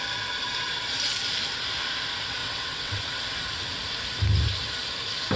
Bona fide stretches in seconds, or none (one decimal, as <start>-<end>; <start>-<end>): 0.0-2.4; 3.1-5.4